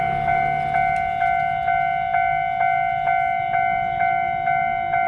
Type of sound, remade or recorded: recorded